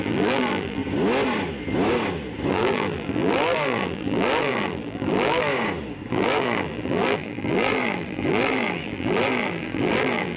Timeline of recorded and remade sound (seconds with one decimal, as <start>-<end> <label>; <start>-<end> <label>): 0.0-0.8 remade; 0.8-2.5 recorded; 2.5-5.5 remade; 5.5-6.1 recorded; 6.1-10.4 remade